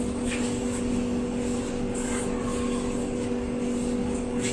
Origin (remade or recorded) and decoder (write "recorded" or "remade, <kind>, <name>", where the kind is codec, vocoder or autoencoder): remade, codec, DAC